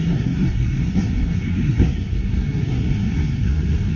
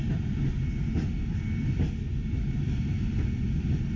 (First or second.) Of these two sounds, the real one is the second